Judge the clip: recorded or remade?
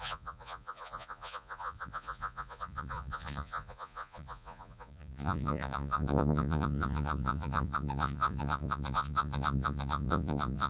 remade